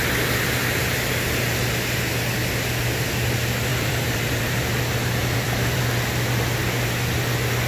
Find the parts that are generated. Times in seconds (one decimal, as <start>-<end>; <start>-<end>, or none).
3.7-4.6; 5.2-5.8